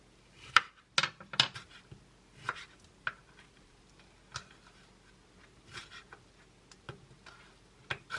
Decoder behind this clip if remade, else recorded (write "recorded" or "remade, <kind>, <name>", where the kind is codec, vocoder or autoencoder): recorded